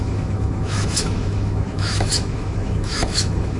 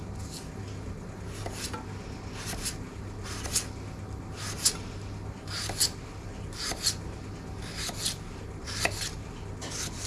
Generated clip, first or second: first